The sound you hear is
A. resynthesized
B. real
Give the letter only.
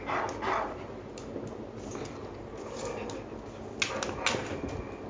B